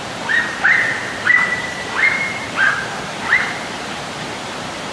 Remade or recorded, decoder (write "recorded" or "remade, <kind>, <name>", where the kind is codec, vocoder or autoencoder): remade, vocoder, BigVGAN v2